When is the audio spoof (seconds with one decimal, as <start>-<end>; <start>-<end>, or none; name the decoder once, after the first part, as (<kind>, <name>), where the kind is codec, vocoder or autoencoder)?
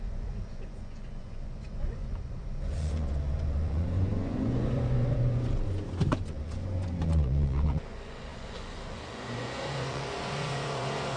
0.0-11.2 (vocoder, Vocos)